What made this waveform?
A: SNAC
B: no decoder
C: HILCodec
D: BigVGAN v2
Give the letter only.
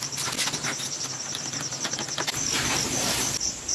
B